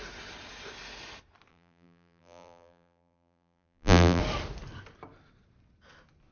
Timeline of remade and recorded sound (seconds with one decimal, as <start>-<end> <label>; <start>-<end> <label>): 0.0-1.5 recorded; 1.5-4.2 remade; 4.2-6.3 recorded